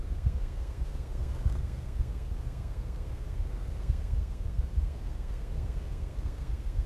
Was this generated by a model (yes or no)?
yes